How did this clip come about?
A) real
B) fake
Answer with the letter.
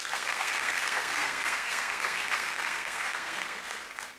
B